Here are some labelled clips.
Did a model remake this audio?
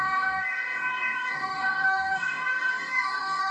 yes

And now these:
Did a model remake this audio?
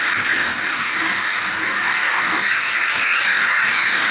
yes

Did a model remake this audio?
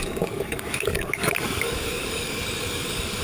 yes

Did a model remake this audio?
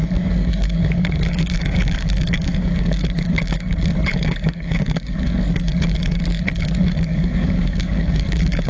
yes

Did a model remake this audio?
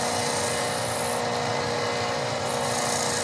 no